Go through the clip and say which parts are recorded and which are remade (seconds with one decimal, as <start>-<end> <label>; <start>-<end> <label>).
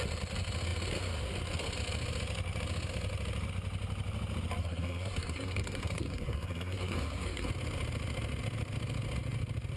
0.0-4.6 recorded; 4.6-7.5 remade; 7.5-9.8 recorded